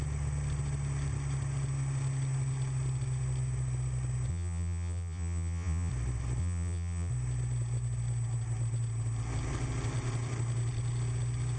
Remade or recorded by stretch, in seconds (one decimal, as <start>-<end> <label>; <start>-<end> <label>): 0.0-4.3 recorded; 4.3-5.9 remade; 5.9-6.4 recorded; 6.4-7.1 remade; 7.1-11.6 recorded